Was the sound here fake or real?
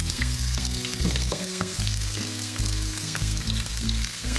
fake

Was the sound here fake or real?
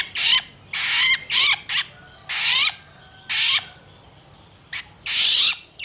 real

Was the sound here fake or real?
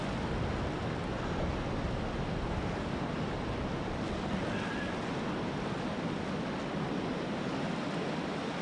real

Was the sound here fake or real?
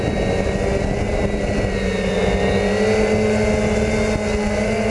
real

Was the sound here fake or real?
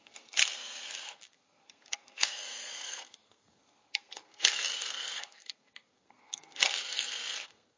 fake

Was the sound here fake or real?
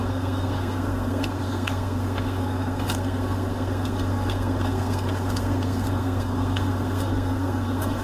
fake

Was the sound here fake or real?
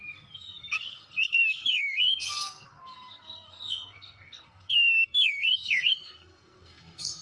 fake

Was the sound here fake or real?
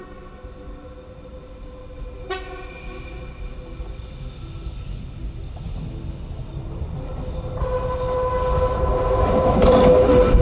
real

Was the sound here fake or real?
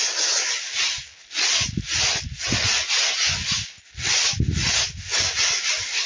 real